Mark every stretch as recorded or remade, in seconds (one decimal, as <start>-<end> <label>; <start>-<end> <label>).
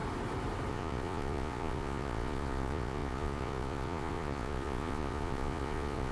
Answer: 0.0-0.7 recorded; 0.7-6.1 remade